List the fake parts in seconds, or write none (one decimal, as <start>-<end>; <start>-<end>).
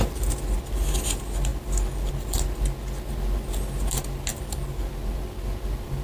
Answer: none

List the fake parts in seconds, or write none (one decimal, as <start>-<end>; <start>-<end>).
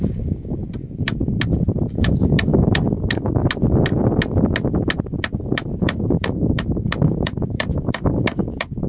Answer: 0.0-0.6; 2.0-3.4; 5.8-8.9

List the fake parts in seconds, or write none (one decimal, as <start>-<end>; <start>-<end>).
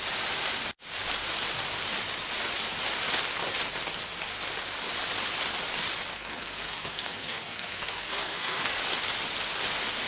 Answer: 6.1-8.8